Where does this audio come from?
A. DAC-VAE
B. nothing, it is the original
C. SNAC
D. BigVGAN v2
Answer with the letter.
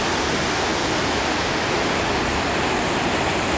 B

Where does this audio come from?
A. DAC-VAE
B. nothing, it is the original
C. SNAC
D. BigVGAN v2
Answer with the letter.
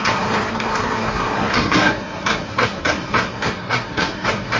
C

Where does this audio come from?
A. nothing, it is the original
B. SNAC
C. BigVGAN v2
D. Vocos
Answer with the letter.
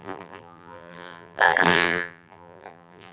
C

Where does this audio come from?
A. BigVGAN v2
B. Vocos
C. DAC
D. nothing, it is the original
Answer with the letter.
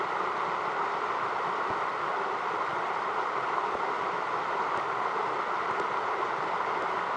D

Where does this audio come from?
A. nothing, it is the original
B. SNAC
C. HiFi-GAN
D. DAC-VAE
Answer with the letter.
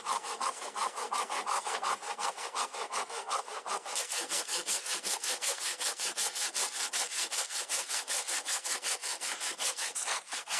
B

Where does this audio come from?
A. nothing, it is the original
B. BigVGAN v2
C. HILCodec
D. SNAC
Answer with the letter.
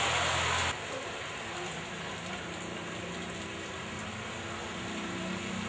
A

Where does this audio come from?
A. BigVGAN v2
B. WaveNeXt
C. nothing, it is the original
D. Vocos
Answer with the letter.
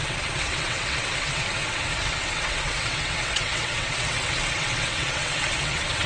B